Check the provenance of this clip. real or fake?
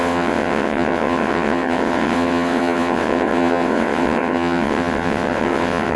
fake